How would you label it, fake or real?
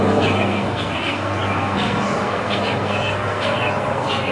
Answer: fake